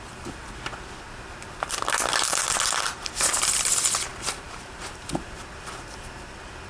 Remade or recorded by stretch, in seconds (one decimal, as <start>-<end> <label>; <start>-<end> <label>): 0.0-4.1 recorded; 4.1-5.5 remade; 5.5-6.7 recorded